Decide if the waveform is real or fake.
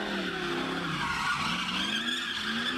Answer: real